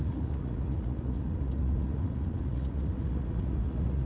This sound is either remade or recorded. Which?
remade